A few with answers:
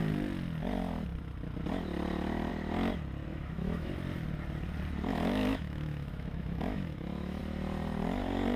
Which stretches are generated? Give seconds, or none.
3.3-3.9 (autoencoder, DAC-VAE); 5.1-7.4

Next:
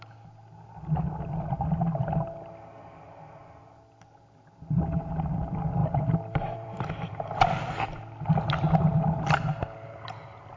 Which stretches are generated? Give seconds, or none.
5.8-8.0 (vocoder, BigVGAN v2)